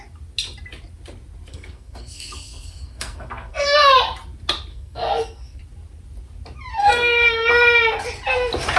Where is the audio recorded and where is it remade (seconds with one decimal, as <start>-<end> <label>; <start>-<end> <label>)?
0.0-1.5 recorded; 1.5-3.9 remade; 3.9-4.7 recorded; 4.7-5.6 remade; 5.6-6.7 recorded; 6.7-7.5 remade; 7.5-8.8 recorded